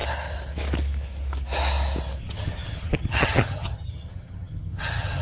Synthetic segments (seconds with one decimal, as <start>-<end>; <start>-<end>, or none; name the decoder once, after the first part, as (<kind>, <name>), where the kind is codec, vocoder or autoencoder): 2.2-5.2 (vocoder, HiFi-GAN)